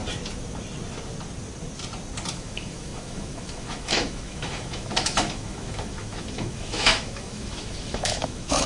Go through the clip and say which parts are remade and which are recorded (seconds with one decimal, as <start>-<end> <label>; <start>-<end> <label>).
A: 0.0-2.3 recorded; 2.3-8.7 remade